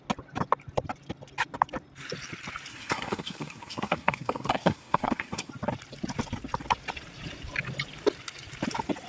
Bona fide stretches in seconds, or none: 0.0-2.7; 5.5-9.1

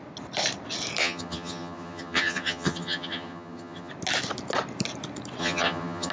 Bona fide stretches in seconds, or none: 0.0-1.0; 3.9-5.4

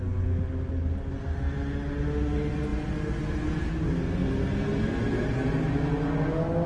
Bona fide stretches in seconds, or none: 0.0-6.7

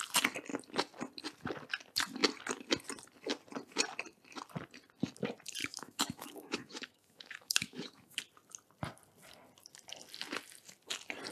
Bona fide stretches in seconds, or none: 0.0-5.6; 8.2-11.3

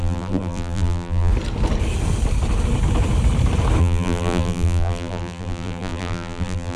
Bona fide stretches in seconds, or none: 1.3-3.8

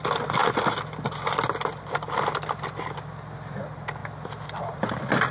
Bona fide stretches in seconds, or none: 0.4-3.6; 4.0-4.6